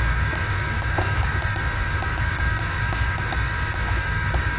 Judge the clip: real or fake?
fake